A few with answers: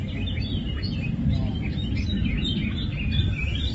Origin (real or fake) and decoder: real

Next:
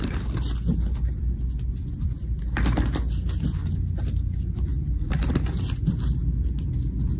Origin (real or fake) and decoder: real